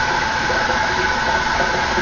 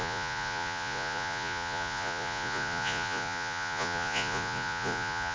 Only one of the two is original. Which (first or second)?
first